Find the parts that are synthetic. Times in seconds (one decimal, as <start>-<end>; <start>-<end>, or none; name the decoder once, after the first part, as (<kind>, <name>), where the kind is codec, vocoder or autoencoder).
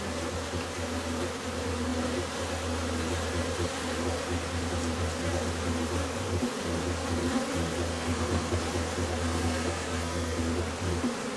7.9-8.6 (codec, SNAC); 9.2-10.5